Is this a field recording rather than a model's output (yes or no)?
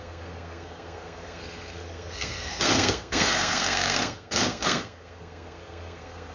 no